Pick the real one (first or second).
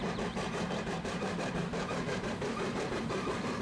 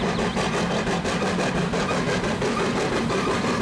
second